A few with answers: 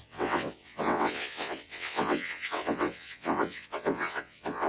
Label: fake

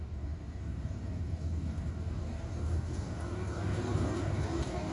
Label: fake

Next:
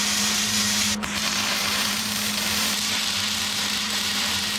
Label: fake